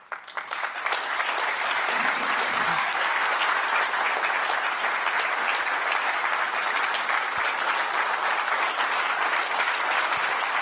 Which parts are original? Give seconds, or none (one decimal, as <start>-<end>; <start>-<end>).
0.0-2.7; 3.3-10.6